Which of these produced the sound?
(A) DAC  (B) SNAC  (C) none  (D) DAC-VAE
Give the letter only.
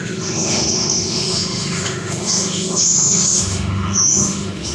D